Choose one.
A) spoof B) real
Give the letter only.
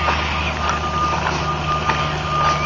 B